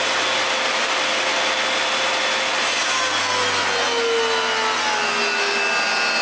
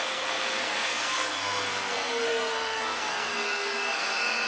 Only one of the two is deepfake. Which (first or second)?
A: second